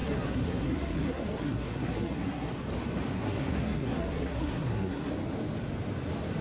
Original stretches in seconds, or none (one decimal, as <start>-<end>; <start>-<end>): 2.5-3.1; 5.1-6.4